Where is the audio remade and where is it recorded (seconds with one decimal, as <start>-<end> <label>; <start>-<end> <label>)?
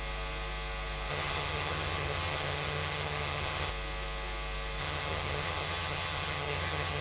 0.0-1.1 recorded; 1.1-3.7 remade; 3.7-4.8 recorded; 4.8-7.0 remade